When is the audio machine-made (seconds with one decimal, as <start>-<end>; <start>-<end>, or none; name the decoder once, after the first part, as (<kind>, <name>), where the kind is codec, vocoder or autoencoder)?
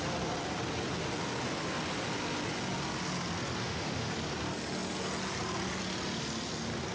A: 3.6-4.1 (autoencoder, DAC-VAE)